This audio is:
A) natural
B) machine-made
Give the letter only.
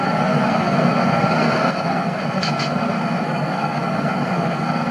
B